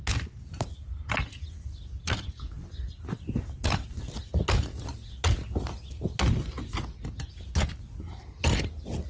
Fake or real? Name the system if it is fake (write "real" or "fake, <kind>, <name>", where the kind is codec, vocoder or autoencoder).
real